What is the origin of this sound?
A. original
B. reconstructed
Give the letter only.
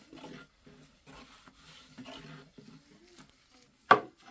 A